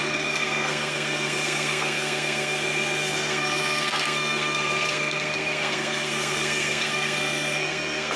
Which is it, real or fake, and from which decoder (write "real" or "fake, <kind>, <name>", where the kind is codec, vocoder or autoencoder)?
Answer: fake, codec, SNAC